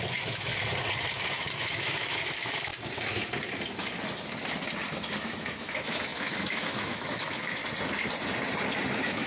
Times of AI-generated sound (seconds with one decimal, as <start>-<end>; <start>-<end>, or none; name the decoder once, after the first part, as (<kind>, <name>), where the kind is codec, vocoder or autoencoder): 0.0-0.5 (autoencoder, DAC-VAE); 1.3-2.7; 5.2-7.6; 8.9-9.3